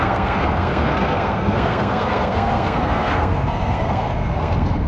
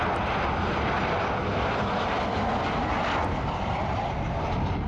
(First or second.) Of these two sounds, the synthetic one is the first